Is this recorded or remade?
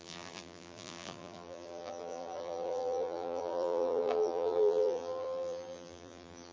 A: remade